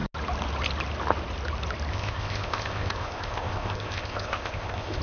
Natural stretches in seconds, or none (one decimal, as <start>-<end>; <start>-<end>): 0.0-1.9